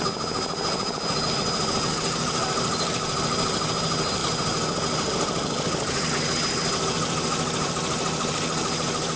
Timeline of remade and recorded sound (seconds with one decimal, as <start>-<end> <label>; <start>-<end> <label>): 0.0-9.2 recorded